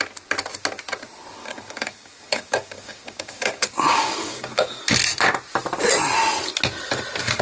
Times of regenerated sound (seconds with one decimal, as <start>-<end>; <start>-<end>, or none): 1.4-4.8